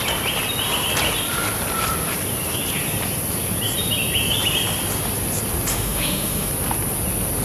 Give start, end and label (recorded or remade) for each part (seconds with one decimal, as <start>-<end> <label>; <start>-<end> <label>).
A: 0.0-5.7 recorded; 5.7-6.5 remade; 6.5-7.4 recorded